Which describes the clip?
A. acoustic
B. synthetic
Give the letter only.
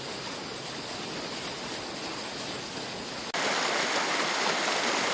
A